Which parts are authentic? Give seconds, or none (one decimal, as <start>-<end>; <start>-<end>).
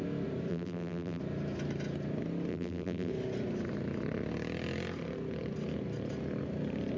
0.0-0.5; 1.2-2.5; 3.1-7.0